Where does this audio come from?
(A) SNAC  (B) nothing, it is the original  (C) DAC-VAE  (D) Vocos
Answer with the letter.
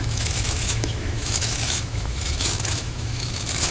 C